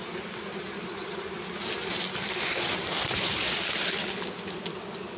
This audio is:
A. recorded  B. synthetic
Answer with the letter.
A